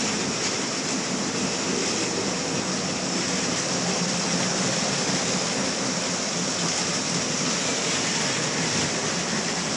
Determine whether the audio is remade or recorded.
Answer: recorded